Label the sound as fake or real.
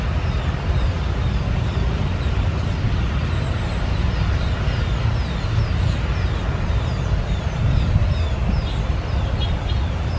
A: real